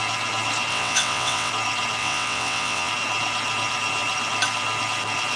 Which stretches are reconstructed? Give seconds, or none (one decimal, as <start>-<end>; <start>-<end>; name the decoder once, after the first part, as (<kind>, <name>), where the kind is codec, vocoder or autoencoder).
0.7-1.5 (vocoder, WaveNeXt); 2.0-2.9